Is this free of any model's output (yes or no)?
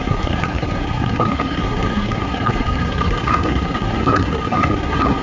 no